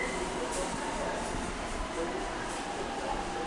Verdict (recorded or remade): recorded